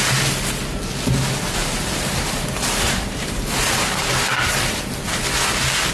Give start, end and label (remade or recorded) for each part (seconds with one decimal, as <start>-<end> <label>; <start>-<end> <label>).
0.0-1.6 recorded; 1.6-5.1 remade; 5.1-5.9 recorded